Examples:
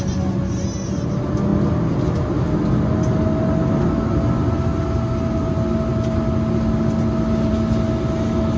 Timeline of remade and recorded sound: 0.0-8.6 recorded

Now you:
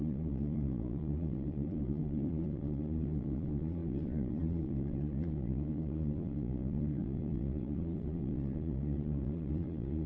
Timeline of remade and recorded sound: 0.0-10.1 remade

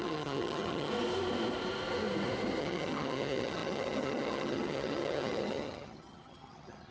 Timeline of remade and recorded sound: 0.0-0.9 remade; 0.9-2.6 recorded; 2.6-6.9 remade

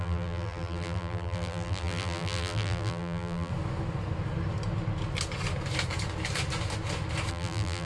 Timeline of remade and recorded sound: 0.0-3.5 remade; 3.5-7.3 recorded; 7.3-7.9 remade

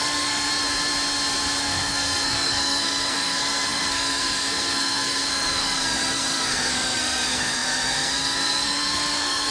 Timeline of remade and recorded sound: 0.0-0.5 remade; 0.5-1.6 recorded; 1.6-9.5 remade